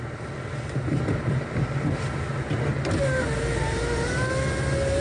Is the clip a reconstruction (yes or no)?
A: no